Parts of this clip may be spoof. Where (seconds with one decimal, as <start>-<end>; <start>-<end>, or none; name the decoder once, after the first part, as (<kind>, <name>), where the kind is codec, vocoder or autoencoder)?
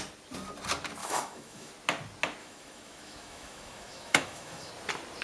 1.0-1.7 (autoencoder, DAC-VAE); 2.4-4.7